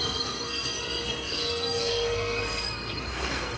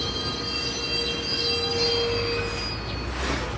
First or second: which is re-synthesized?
first